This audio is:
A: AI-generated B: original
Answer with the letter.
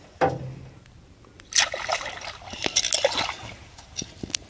B